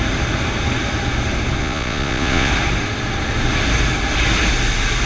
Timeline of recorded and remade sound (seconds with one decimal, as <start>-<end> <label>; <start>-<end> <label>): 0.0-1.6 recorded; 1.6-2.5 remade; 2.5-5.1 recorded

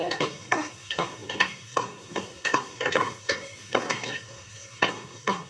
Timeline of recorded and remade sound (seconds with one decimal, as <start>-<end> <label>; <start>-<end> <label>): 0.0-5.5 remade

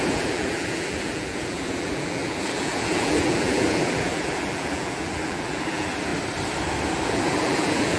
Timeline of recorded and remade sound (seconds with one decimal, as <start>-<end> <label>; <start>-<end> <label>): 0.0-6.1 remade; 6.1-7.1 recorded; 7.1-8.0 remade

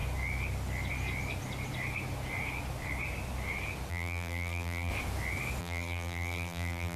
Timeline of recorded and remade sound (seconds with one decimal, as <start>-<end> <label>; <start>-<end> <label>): 0.0-3.9 recorded; 3.9-4.9 remade; 4.9-5.6 recorded; 5.6-7.0 remade

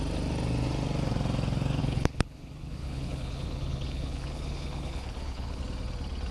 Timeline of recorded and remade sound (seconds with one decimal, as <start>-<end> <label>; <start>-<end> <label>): 0.0-1.8 recorded; 1.8-5.6 remade; 5.6-6.3 recorded